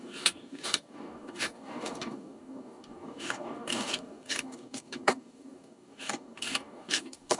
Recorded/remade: remade